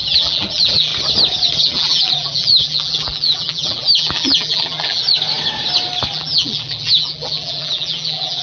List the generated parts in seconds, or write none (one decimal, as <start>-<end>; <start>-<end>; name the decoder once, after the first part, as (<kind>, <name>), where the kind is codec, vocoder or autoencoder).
0.0-0.9 (vocoder, BigVGAN v2); 1.6-5.0; 6.1-8.4